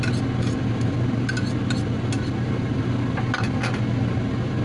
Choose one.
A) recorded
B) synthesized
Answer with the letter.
A